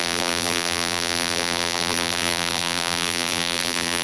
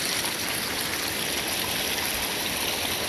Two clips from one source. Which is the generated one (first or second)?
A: first